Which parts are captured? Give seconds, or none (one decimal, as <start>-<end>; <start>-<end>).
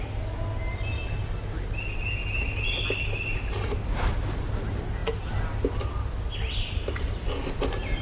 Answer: 0.0-8.0